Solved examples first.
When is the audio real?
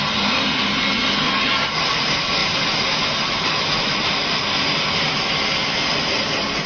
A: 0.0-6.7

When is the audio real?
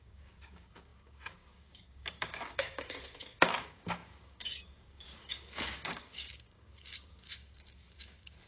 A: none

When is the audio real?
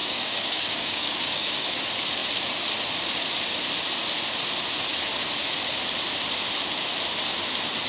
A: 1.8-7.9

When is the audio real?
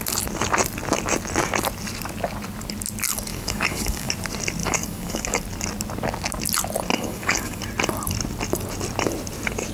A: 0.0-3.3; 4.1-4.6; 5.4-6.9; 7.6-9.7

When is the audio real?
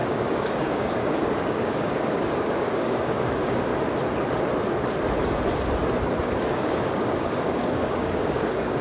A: 3.7-6.4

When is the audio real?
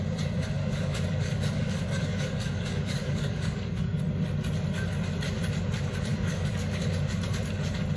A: 0.0-0.6; 4.0-6.1; 6.8-8.0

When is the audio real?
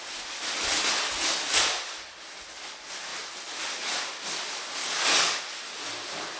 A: 0.0-4.8; 5.4-6.4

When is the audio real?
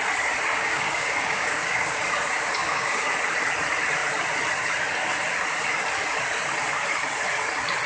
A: 0.0-0.5; 2.0-2.6; 3.1-7.9